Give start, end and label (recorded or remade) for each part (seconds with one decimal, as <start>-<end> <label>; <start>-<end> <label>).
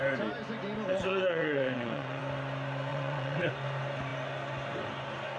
0.0-0.9 recorded; 0.9-2.2 remade; 2.2-2.9 recorded; 2.9-3.5 remade; 3.5-5.4 recorded